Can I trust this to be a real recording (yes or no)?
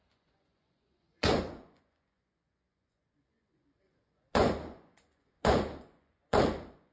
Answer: no